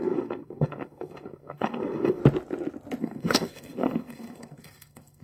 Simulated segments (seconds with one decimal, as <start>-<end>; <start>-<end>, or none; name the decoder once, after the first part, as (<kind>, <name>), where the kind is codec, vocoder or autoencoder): 0.0-2.2 (codec, SNAC); 3.0-5.2